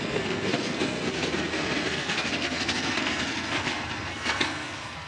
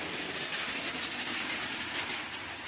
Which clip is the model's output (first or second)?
first